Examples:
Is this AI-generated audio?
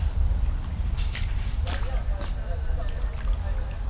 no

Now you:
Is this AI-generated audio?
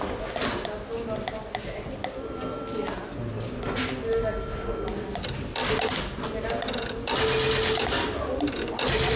no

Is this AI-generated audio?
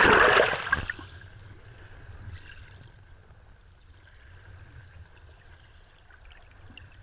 no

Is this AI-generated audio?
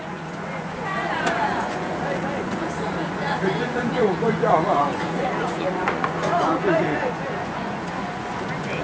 yes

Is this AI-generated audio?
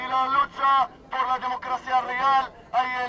no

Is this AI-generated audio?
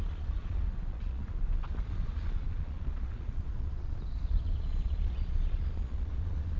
yes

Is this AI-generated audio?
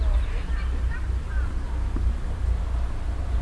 no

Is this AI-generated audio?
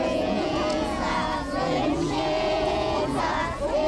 yes